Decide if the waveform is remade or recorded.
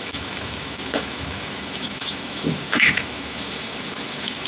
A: remade